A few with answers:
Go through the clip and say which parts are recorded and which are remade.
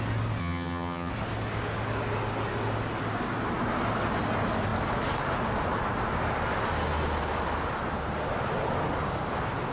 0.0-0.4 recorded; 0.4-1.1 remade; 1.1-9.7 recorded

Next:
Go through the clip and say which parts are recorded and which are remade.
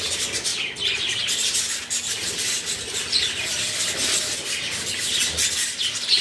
0.0-0.5 recorded; 0.5-4.2 remade; 4.2-6.2 recorded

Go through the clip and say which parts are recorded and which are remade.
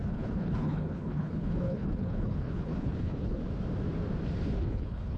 0.0-3.4 remade; 3.4-4.6 recorded; 4.6-5.2 remade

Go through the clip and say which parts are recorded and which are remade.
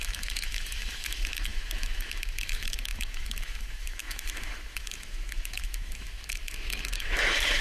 0.0-7.6 remade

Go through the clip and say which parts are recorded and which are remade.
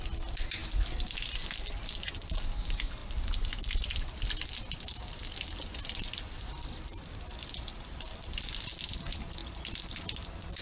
0.0-10.6 recorded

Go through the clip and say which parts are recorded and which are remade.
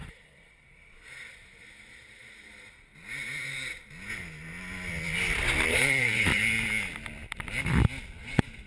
0.0-2.9 remade; 2.9-5.7 recorded; 5.7-6.4 remade; 6.4-8.2 recorded; 8.2-8.7 remade